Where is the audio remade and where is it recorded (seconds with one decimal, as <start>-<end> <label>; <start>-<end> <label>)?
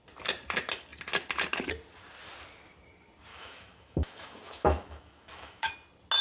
0.0-3.3 recorded; 3.3-5.7 remade; 5.7-6.2 recorded